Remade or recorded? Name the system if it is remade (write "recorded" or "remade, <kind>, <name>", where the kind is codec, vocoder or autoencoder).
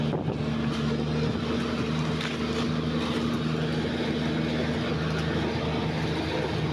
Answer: recorded